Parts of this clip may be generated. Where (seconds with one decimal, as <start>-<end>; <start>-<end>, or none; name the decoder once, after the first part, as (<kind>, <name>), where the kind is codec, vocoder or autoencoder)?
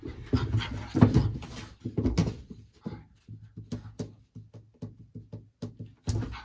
none